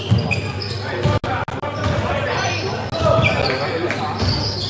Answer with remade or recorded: recorded